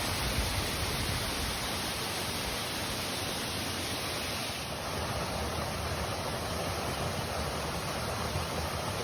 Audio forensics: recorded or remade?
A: recorded